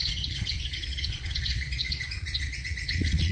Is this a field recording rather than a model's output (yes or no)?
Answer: no